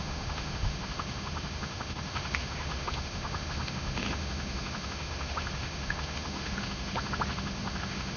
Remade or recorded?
remade